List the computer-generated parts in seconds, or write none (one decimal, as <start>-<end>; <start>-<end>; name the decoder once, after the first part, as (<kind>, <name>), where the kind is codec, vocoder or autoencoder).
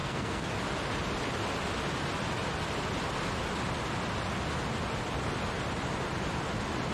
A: 0.0-0.5 (codec, SNAC)